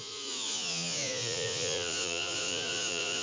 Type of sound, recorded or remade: remade